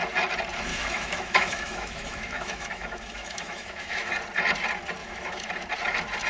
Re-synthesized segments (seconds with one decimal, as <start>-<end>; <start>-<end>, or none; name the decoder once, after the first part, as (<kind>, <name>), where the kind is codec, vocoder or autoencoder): 0.7-4.1 (autoencoder, DAC-VAE); 5.0-5.5